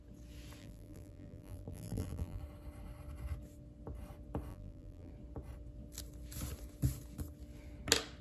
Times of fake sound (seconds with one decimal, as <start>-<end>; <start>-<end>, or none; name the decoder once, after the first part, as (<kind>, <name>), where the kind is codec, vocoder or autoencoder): 0.6-2.4 (vocoder, BigVGAN v2); 4.5-5.1